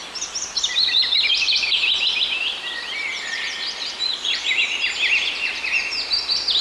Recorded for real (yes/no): no